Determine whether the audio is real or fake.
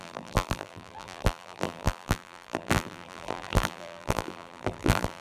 fake